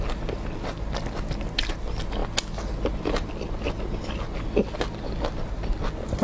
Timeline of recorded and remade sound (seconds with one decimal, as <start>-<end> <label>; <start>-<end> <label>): 0.0-6.2 recorded